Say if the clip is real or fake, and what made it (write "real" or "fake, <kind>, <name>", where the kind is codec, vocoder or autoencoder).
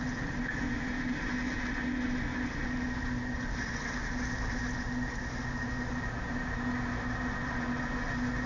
real